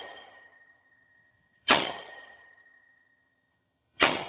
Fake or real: fake